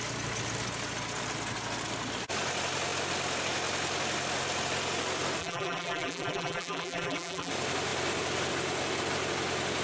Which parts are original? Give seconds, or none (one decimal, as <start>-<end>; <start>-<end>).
0.0-5.4; 7.5-9.8